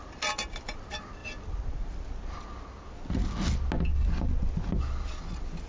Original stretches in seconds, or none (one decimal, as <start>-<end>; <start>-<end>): 0.0-5.7